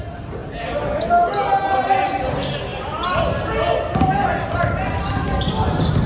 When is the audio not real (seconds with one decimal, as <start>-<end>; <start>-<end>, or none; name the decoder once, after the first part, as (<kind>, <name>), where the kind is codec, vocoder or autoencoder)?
none